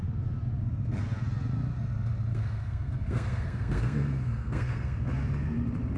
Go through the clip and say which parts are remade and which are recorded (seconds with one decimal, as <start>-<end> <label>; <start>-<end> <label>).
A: 0.0-2.3 recorded; 2.3-5.1 remade; 5.1-6.0 recorded